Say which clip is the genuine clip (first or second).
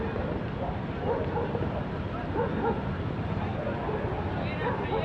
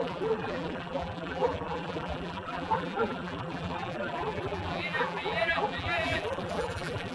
first